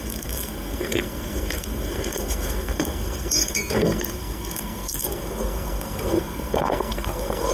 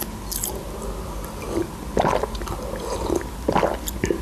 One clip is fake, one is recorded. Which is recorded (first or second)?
second